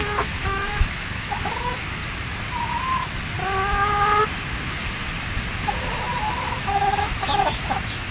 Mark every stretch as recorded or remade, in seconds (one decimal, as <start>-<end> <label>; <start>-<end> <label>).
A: 0.0-2.0 remade; 2.0-6.2 recorded; 6.2-8.1 remade

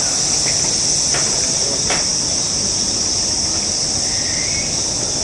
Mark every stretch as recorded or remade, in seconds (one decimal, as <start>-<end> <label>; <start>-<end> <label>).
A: 0.0-5.2 recorded